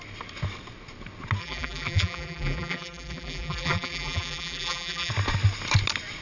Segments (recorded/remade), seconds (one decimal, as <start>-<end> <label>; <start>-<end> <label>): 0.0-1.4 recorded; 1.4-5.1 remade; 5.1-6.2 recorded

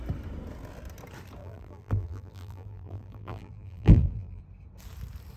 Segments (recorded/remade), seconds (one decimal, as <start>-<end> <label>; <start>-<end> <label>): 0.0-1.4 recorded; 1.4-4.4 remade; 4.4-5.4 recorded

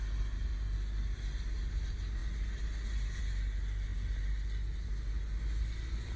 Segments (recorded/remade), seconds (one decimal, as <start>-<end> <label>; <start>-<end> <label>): 0.0-6.2 recorded

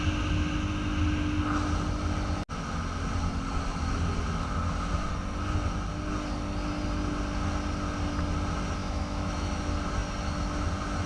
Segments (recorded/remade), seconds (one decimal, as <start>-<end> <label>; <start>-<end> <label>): 0.0-8.8 recorded; 8.8-9.6 remade; 9.6-11.1 recorded

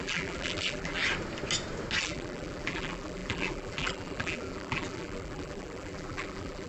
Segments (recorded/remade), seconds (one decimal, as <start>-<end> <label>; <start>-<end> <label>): 0.0-1.0 remade; 1.0-2.0 recorded; 2.0-6.7 remade